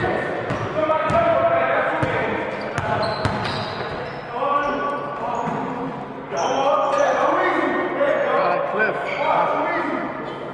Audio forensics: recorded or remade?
recorded